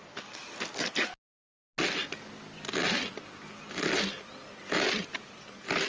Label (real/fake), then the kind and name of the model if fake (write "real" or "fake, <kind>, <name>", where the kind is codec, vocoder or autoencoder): real